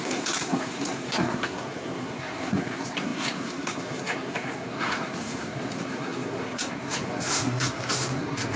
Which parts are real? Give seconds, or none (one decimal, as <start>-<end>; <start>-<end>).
none